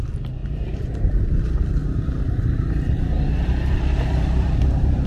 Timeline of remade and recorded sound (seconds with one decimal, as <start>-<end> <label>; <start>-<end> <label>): 0.0-0.4 recorded; 0.4-1.4 remade; 1.4-1.8 recorded; 1.8-5.1 remade